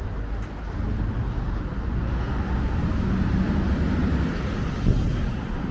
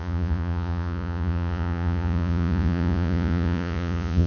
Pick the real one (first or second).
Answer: first